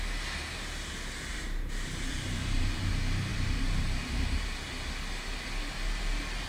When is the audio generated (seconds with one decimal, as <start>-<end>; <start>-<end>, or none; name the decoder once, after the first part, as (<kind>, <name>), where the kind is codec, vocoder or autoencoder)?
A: 1.3-2.9 (vocoder, BigVGAN v2); 3.3-4.6